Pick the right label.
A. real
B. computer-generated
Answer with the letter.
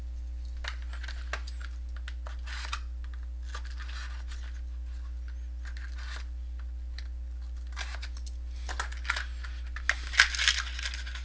A